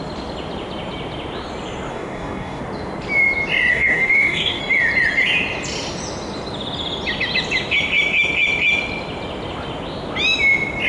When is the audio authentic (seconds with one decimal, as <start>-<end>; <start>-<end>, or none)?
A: 0.0-1.9; 2.6-3.7; 4.6-10.9

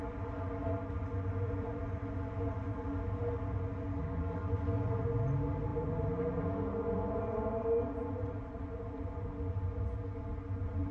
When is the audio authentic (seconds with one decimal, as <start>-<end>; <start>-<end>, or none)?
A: 0.0-3.9; 4.5-10.9